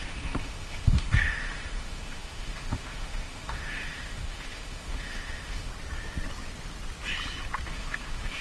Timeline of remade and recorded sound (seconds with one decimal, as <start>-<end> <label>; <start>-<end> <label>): 0.0-5.7 remade; 5.7-7.7 recorded; 7.7-8.4 remade